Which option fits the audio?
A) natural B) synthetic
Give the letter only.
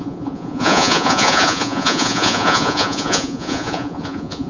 B